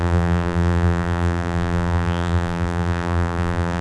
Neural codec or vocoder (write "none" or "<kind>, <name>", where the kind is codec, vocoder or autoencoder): vocoder, BigVGAN v2